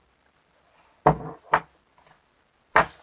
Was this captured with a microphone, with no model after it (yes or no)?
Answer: yes